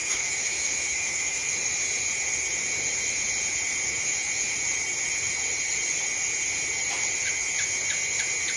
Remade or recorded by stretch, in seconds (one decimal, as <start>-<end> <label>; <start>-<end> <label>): 0.0-1.5 remade; 1.5-8.6 recorded